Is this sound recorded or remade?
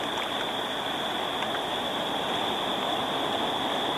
recorded